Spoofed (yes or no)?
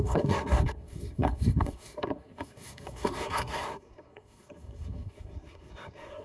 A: yes